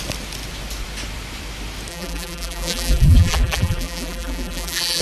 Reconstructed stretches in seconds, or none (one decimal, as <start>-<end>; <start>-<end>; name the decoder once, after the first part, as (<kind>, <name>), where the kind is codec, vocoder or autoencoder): 1.9-5.0 (vocoder, BigVGAN v2)